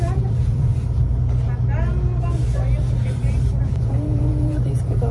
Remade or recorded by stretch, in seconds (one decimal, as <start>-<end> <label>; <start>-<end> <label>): 0.0-0.7 remade; 0.7-3.8 recorded; 3.8-5.1 remade